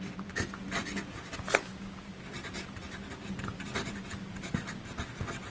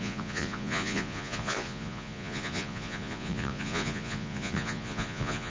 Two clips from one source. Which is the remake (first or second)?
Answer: second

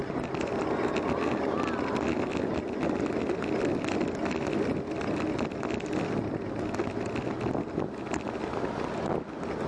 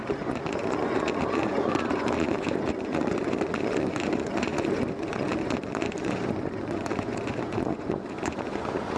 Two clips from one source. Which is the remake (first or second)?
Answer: second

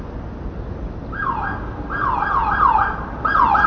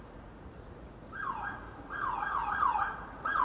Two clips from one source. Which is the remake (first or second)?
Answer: second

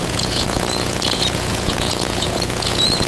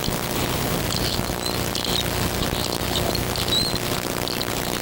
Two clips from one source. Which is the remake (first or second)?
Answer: first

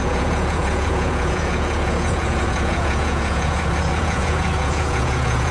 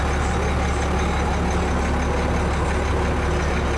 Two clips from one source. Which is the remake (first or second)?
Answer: first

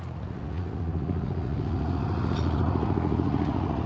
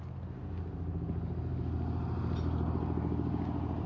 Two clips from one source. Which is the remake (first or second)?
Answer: first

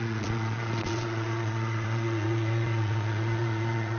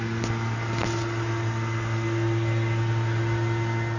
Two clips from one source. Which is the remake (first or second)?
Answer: first